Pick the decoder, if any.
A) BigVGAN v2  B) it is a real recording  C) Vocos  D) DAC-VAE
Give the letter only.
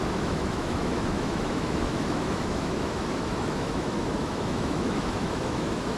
D